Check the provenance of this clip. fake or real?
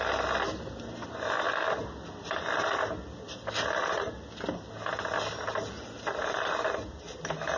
real